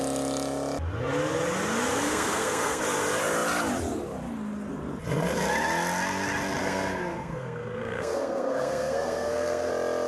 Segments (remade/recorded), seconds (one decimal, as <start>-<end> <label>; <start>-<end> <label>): 0.0-1.9 recorded; 1.9-2.8 remade; 2.8-6.6 recorded; 6.6-9.7 remade; 9.7-10.1 recorded